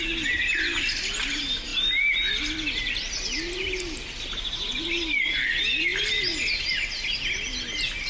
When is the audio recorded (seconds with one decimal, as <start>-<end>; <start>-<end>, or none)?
0.0-8.1